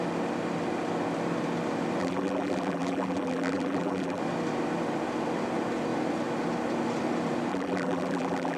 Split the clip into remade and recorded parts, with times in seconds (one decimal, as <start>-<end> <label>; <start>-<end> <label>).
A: 0.0-2.0 recorded; 2.0-4.2 remade; 4.2-7.5 recorded; 7.5-8.6 remade

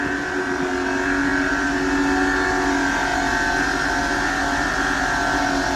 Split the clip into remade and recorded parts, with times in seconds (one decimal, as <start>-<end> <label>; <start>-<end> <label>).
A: 0.0-5.8 recorded